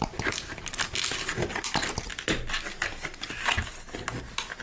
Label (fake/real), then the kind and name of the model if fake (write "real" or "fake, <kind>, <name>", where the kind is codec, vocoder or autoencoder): real